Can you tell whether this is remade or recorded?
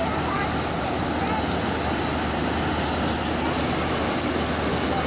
recorded